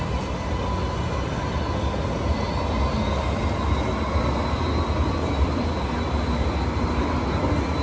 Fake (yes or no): no